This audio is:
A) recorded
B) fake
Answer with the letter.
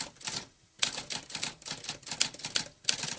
A